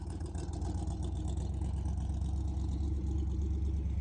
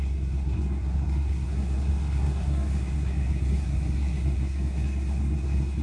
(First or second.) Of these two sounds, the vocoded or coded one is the second